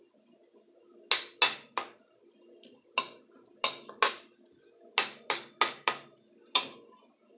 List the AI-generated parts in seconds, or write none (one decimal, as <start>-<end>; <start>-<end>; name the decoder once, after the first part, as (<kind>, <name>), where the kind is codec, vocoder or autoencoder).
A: none